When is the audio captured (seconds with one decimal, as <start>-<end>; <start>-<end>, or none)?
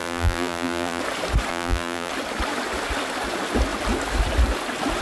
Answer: 1.0-1.5; 2.1-5.0